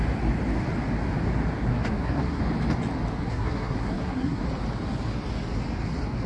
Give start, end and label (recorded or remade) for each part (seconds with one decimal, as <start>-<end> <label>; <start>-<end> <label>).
0.0-1.7 recorded; 1.7-2.4 remade; 2.4-3.2 recorded; 3.2-4.4 remade; 4.4-6.3 recorded